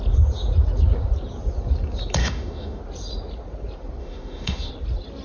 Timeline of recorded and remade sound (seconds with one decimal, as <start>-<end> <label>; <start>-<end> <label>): 0.0-2.2 recorded; 2.2-2.8 remade; 2.8-4.0 recorded; 4.0-4.7 remade; 4.7-5.2 recorded